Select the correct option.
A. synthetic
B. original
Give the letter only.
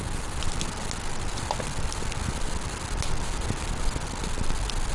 B